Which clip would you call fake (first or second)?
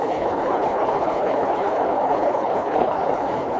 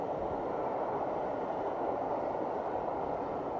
first